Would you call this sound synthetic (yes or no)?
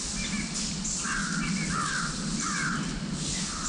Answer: no